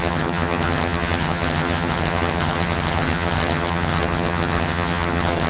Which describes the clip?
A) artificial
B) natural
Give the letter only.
A